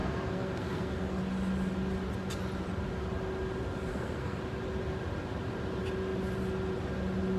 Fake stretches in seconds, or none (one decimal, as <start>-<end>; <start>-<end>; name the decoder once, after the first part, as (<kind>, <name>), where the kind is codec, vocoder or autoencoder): 0.0-1.2 (codec, SNAC); 3.9-4.4